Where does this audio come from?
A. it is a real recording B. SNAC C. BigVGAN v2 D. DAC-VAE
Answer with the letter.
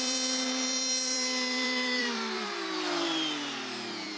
C